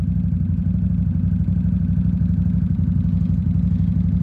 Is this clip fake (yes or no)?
no